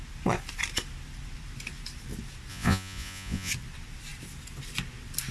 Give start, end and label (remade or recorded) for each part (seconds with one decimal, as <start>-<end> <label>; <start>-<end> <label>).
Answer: 0.0-2.5 recorded; 2.5-3.5 remade; 3.5-5.3 recorded